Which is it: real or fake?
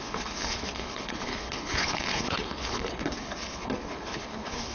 fake